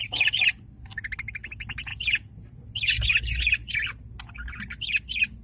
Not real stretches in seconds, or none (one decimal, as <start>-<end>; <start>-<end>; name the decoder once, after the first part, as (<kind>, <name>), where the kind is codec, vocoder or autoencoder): none